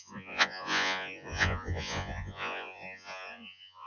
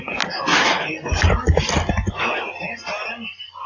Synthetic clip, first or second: first